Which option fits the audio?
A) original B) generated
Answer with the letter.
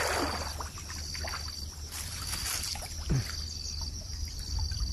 A